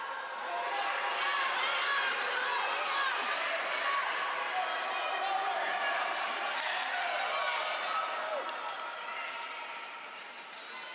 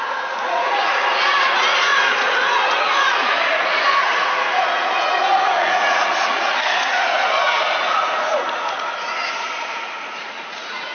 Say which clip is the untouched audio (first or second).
first